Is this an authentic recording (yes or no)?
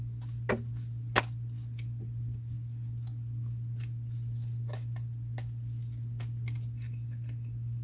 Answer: yes